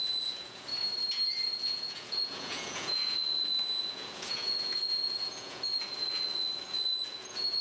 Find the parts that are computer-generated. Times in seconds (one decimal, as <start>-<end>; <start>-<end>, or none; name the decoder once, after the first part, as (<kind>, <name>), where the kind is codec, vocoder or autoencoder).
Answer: 0.0-0.7 (vocoder, Vocos); 1.5-7.6